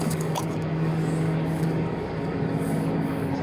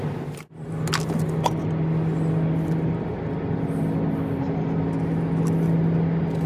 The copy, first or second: first